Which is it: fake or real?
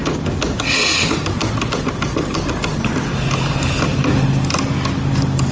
real